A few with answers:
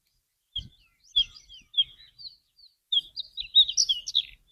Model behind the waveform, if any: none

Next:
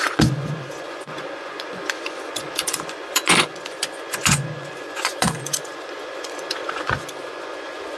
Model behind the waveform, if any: vocoder, Vocos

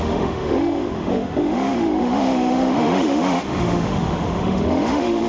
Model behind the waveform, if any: autoencoder, DAC-VAE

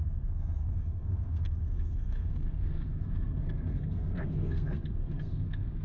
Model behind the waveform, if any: codec, SNAC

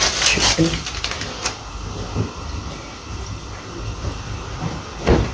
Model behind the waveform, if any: none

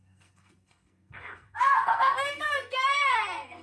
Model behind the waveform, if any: codec, SNAC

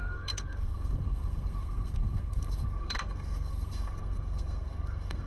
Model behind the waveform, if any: codec, SNAC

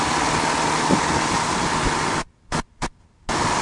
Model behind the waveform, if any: none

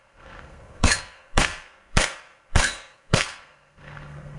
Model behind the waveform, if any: codec, SNAC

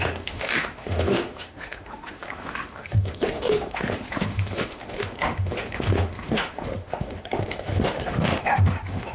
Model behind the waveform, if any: autoencoder, DAC-VAE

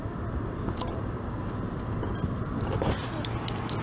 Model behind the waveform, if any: none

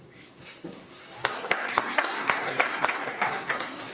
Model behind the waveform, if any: codec, SNAC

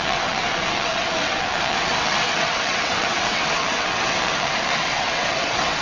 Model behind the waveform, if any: vocoder, WaveNeXt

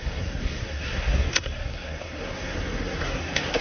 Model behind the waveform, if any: codec, SNAC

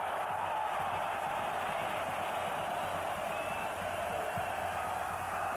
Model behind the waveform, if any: none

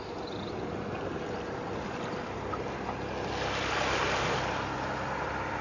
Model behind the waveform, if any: none